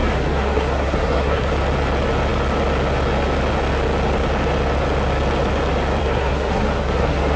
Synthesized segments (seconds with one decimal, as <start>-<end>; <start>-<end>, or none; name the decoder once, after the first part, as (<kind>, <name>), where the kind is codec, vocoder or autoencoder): 0.0-1.5 (codec, SNAC); 6.0-7.4